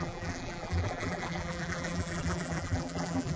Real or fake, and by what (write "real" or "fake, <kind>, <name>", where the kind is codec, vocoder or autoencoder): fake, vocoder, BigVGAN v2